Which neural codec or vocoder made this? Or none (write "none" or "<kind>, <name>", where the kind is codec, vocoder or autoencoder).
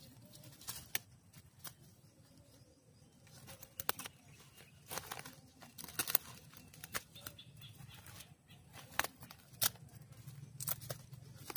none